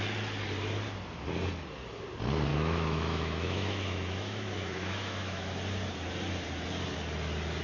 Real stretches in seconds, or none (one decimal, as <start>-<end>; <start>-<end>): 0.0-2.5; 5.5-7.6

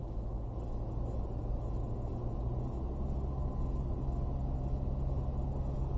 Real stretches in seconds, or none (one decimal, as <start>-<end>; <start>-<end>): 0.0-6.0

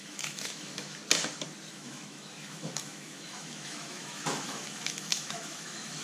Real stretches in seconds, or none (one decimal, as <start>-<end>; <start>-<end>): 1.0-1.7